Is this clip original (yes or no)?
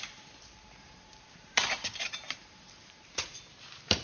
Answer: no